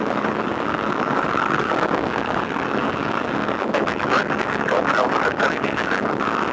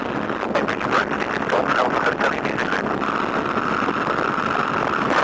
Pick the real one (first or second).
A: second